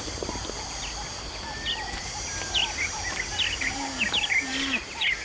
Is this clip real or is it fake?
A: real